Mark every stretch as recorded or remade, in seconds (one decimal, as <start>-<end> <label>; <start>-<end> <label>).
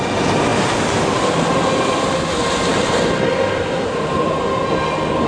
0.0-2.7 recorded; 2.7-4.2 remade; 4.2-5.3 recorded